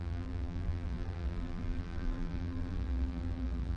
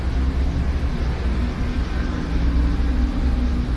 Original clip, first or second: second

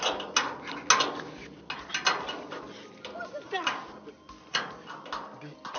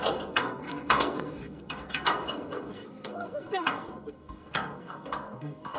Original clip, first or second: first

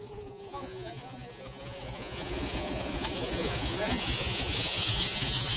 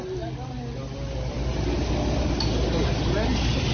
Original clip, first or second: second